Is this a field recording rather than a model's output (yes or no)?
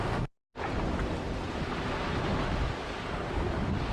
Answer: yes